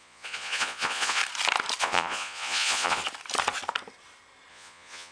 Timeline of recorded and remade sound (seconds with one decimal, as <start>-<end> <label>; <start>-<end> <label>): 0.0-1.2 remade; 1.2-1.8 recorded; 1.8-3.0 remade; 3.0-4.5 recorded; 4.5-5.1 remade